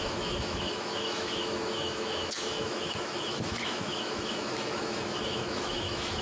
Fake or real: fake